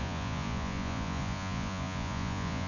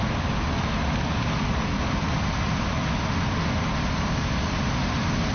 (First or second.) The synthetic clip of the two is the first